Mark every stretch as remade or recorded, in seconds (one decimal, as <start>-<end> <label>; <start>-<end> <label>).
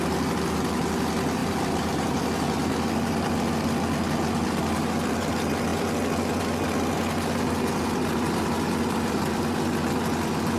0.0-1.4 recorded; 1.4-2.2 remade; 2.2-10.6 recorded